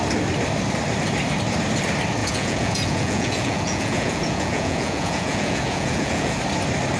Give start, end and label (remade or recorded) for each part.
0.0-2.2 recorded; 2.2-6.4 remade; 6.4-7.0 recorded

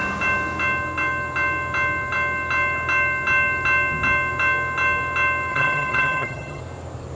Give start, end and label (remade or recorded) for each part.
0.0-5.5 recorded; 5.5-6.6 remade; 6.6-7.2 recorded

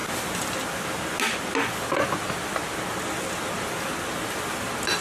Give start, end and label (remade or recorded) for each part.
0.0-5.0 recorded

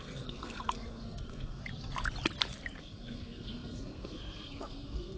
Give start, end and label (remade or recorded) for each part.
0.0-1.6 remade; 1.6-2.8 recorded; 2.8-5.2 remade

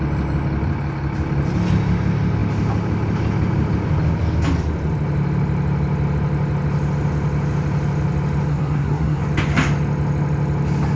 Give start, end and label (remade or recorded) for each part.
0.0-8.5 recorded; 8.5-9.2 remade; 9.2-11.0 recorded

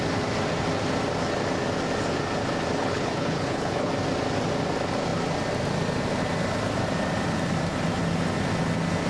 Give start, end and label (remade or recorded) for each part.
0.0-2.8 recorded; 2.8-3.9 remade; 3.9-9.1 recorded

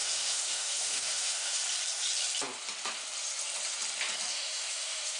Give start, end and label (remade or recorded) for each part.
0.0-1.6 remade; 1.6-4.3 recorded; 4.3-5.2 remade

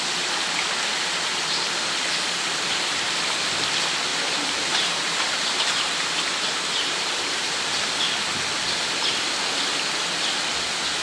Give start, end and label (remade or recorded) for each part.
0.0-4.1 recorded; 4.1-8.0 remade; 8.0-11.0 recorded